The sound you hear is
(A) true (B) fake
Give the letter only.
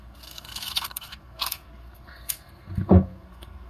B